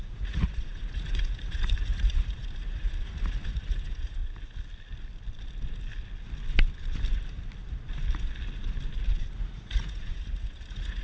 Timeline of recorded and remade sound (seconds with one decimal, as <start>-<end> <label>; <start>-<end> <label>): 0.0-4.2 remade; 4.2-9.3 recorded; 9.3-11.0 remade